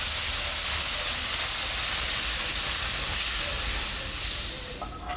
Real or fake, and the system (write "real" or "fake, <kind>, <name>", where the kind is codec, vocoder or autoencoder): real